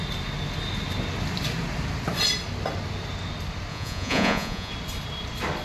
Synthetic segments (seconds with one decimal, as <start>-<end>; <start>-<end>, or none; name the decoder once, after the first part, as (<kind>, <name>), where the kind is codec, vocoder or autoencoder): 3.7-4.7 (vocoder, Vocos)